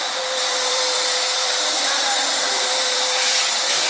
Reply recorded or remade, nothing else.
remade